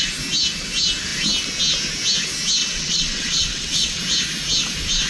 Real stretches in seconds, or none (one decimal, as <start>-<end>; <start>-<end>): 0.0-2.6; 4.0-5.1